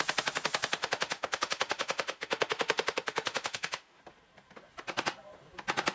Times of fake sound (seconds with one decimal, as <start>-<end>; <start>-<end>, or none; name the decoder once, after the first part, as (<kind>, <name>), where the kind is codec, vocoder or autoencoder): 0.8-4.0 (autoencoder, DAC-VAE)